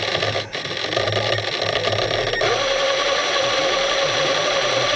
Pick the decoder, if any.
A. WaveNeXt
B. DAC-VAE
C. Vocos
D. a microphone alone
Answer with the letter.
D